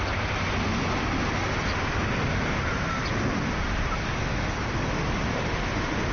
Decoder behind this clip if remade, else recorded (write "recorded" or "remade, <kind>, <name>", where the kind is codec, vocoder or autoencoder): recorded